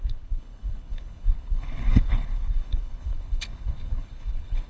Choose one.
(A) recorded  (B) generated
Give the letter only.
B